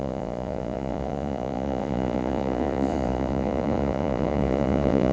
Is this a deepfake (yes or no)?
yes